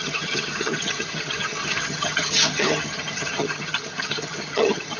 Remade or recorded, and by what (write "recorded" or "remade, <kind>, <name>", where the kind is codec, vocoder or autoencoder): remade, vocoder, HiFi-GAN